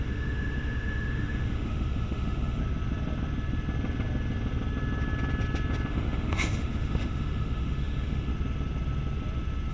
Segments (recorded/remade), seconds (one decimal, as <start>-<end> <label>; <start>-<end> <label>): 0.0-2.6 remade; 2.6-5.9 recorded; 5.9-8.3 remade; 8.3-9.7 recorded